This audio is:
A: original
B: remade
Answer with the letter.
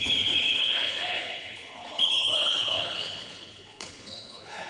B